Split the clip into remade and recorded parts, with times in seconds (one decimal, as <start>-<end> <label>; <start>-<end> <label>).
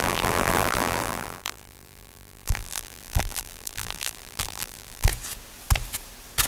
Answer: 0.0-5.1 remade; 5.1-6.5 recorded